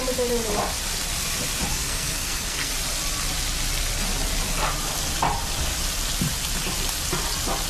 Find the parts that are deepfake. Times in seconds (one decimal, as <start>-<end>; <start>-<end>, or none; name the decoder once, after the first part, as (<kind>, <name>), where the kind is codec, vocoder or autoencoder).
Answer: 1.7-2.7 (codec, SNAC)